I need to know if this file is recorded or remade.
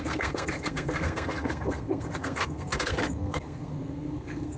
remade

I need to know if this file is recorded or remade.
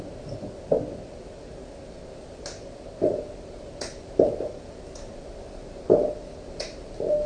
recorded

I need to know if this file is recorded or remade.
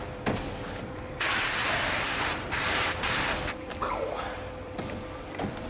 remade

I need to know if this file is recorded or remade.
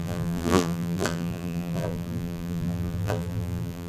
remade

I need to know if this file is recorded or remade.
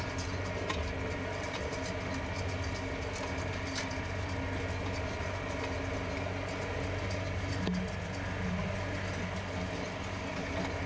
recorded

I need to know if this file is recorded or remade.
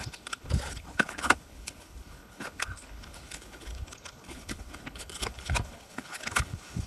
remade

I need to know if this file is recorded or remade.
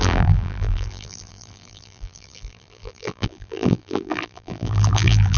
remade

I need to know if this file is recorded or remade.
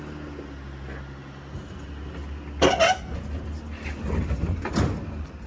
recorded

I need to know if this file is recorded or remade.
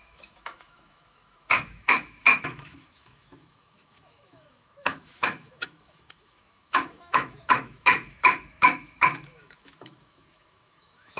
remade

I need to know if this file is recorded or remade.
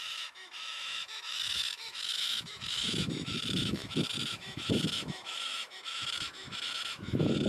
remade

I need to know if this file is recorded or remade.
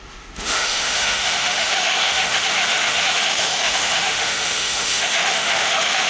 remade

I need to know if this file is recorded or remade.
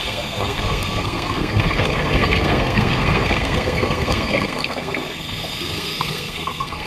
remade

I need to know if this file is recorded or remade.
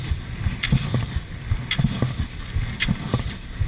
recorded